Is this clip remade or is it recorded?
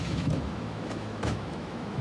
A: remade